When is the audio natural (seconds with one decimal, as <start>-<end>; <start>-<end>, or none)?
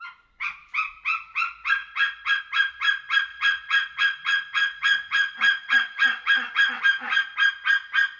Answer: 0.0-1.8; 2.4-3.3; 6.8-8.2